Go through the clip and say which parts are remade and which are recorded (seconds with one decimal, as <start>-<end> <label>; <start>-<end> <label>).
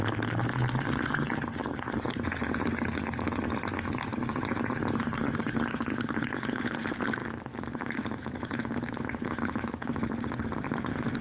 0.0-7.2 recorded; 7.2-9.9 remade; 9.9-11.2 recorded